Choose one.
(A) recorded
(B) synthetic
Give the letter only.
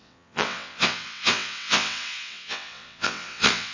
B